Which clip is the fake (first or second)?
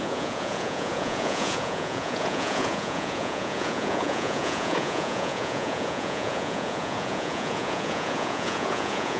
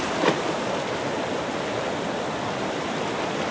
first